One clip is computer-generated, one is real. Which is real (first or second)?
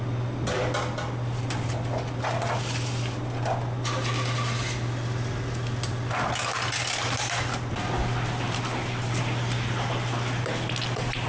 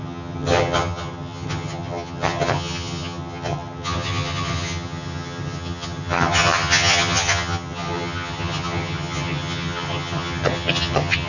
first